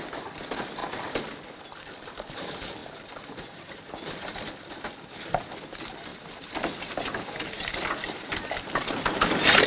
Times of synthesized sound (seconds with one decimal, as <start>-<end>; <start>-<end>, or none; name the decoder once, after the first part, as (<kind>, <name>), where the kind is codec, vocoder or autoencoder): 0.0-0.8 (vocoder, BigVGAN v2); 1.9-8.3; 9.2-9.7